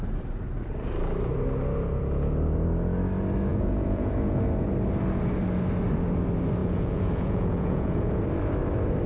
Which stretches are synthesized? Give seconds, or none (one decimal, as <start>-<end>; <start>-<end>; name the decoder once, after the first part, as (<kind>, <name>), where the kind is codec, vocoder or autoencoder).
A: 3.5-4.4 (vocoder, Vocos); 6.6-8.2